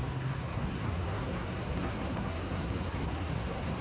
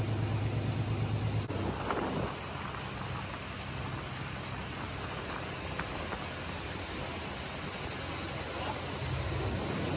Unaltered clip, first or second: second